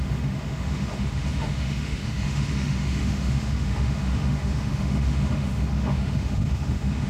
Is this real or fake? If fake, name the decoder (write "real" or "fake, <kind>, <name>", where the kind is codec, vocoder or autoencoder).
fake, autoencoder, DAC-VAE